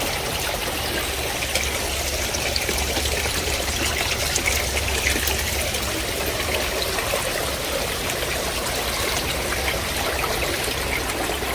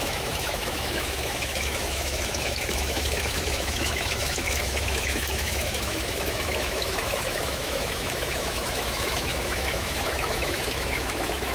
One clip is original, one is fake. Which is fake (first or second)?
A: second